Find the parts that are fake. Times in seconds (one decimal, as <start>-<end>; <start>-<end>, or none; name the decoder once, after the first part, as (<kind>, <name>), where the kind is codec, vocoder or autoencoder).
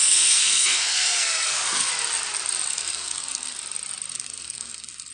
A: 0.0-1.9 (codec, SNAC); 2.7-3.6; 4.1-5.1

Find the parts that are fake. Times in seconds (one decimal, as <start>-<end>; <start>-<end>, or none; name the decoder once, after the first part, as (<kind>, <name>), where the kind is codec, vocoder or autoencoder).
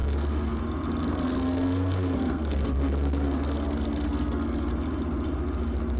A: 0.0-0.6 (codec, SNAC); 1.1-4.7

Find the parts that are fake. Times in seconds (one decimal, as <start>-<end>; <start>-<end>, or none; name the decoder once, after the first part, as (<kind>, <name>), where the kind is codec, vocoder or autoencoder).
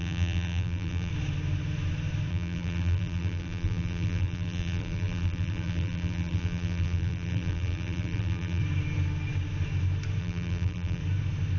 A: 0.0-1.1 (vocoder, BigVGAN v2); 2.3-8.6; 10.2-11.0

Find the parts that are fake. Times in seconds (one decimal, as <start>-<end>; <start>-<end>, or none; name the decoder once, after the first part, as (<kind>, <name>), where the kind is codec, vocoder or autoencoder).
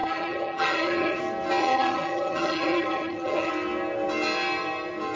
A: 0.0-1.2 (vocoder, HiFi-GAN); 1.6-3.5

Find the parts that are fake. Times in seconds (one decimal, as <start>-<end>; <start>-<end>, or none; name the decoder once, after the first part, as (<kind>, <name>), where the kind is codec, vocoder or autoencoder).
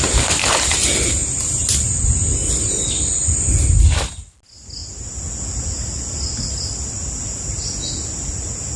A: none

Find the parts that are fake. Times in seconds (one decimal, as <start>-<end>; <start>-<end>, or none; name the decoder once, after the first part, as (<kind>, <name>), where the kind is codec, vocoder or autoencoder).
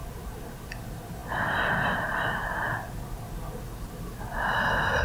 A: 0.0-0.7 (vocoder, BigVGAN v2)